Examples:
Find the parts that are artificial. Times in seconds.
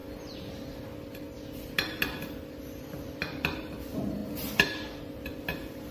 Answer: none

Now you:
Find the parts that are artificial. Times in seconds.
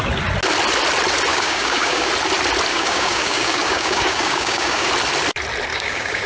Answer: 1.3-2.1 (codec, DAC); 2.7-4.9; 5.7-6.3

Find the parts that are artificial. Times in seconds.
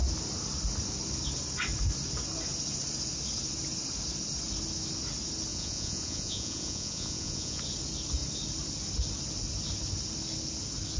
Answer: 5.5-7.6 (vocoder, Vocos)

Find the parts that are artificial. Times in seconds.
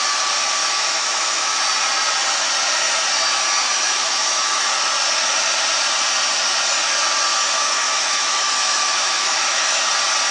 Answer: 0.6-1.6 (autoencoder, DAC-VAE); 3.7-4.6; 7.3-9.8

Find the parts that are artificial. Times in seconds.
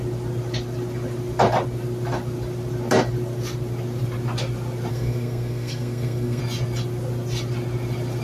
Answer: 4.9-6.4 (codec, SNAC)